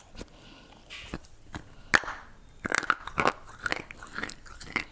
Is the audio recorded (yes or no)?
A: yes